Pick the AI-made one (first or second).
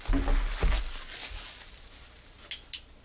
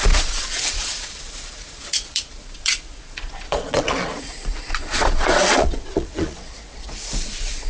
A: second